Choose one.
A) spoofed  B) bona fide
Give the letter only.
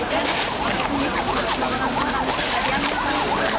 B